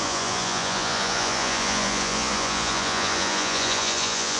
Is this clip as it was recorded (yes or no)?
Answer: no